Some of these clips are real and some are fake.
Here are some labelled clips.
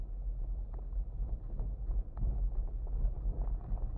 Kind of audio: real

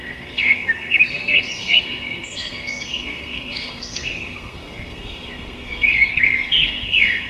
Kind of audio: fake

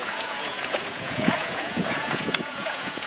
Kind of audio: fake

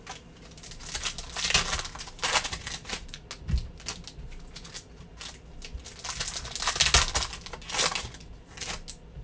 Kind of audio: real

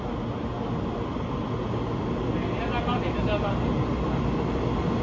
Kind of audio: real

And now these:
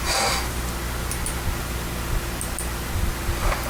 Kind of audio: real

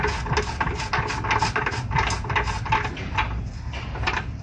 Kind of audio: real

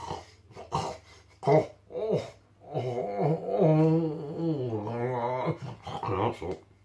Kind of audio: real